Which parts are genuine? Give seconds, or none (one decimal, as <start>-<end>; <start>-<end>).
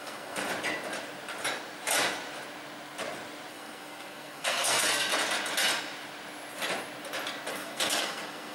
0.4-3.5; 5.1-7.5